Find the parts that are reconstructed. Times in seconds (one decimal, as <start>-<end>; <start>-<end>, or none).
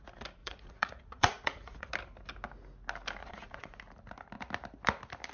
0.4-1.9; 3.2-3.8